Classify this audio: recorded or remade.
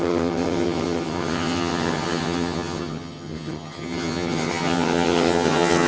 remade